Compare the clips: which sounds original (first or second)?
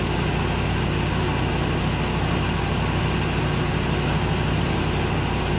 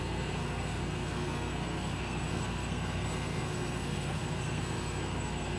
first